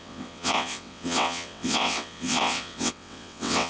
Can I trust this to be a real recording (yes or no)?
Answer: no